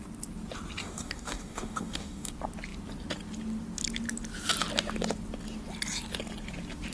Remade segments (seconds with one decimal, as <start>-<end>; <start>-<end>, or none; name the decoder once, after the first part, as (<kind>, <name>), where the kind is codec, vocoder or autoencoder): 0.8-2.3 (codec, DAC)